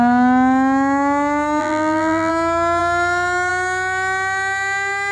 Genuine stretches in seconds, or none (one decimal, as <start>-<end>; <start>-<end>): 0.0-1.6; 2.3-5.1